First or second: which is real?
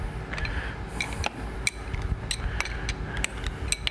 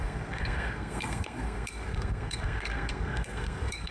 first